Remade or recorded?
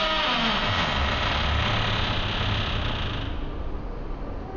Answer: recorded